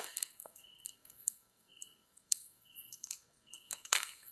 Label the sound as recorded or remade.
remade